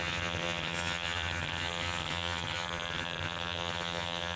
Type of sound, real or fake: fake